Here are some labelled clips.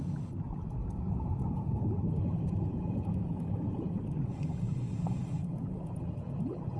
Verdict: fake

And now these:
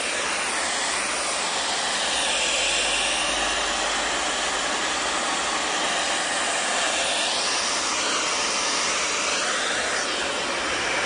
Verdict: real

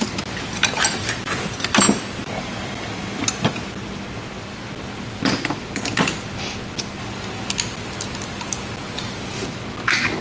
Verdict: real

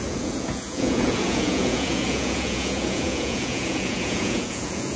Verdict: fake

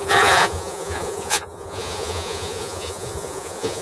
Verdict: fake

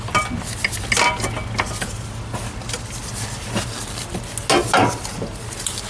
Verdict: real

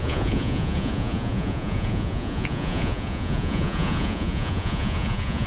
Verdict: fake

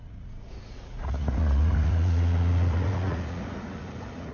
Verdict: fake